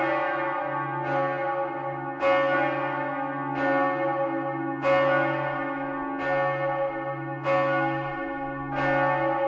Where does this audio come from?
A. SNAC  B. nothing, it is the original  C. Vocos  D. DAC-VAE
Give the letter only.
B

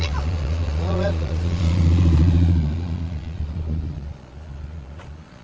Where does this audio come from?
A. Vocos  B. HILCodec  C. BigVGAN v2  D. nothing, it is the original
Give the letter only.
A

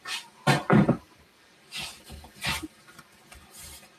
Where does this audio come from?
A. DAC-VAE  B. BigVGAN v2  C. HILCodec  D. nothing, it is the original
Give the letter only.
B